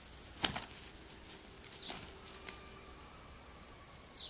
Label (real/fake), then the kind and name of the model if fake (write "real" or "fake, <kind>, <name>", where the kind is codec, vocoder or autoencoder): real